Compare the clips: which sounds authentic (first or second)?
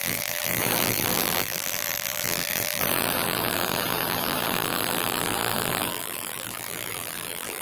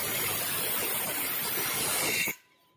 second